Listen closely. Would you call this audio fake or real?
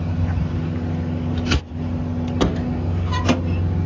real